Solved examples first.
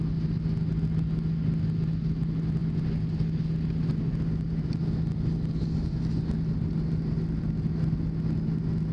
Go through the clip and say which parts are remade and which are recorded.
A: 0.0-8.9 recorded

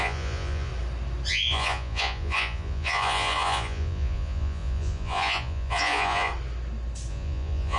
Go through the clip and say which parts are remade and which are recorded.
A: 0.0-0.7 remade; 0.7-1.3 recorded; 1.3-6.3 remade; 6.3-7.1 recorded; 7.1-7.8 remade

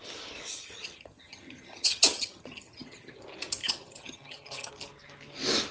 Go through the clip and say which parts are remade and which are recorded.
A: 0.0-0.5 recorded; 0.5-3.2 remade; 3.2-3.6 recorded; 3.6-4.7 remade; 4.7-5.7 recorded

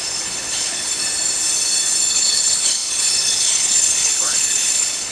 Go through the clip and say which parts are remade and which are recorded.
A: 0.0-1.0 remade; 1.0-2.1 recorded; 2.1-5.1 remade

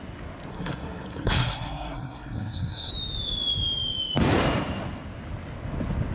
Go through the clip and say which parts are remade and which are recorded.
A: 0.0-0.5 recorded; 0.5-2.9 remade; 2.9-6.1 recorded